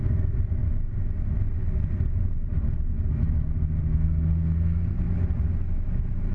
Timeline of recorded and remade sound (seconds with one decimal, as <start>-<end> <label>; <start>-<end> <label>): 0.0-3.8 recorded; 3.8-5.0 remade; 5.0-6.3 recorded